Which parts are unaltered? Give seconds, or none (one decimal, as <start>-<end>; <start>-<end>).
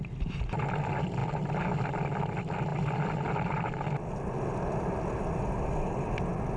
0.0-6.6